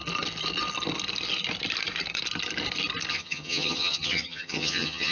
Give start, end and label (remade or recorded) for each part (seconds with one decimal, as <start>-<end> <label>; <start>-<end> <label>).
0.0-3.1 recorded; 3.1-5.1 remade